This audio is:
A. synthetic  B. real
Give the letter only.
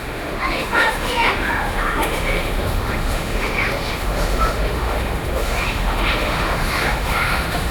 A